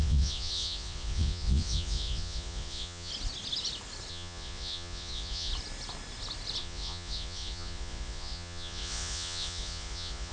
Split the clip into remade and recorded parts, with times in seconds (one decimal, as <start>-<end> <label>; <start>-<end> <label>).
0.0-3.1 remade; 3.1-4.1 recorded; 4.1-5.5 remade; 5.5-6.6 recorded; 6.6-10.3 remade